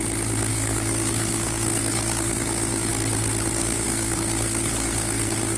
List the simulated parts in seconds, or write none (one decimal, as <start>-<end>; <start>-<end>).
0.5-2.9; 3.6-5.6